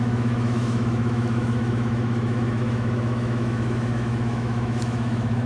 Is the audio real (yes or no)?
no